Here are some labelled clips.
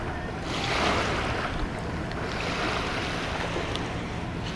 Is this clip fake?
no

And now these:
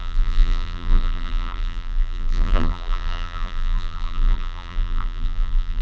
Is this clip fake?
yes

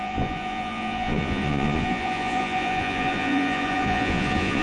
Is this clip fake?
yes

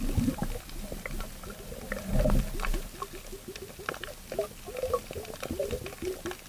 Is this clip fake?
no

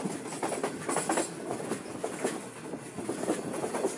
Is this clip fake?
no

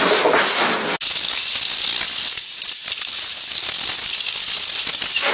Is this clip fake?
no